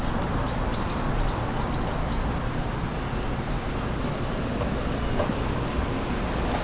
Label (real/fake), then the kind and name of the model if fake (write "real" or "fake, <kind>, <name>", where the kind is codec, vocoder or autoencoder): real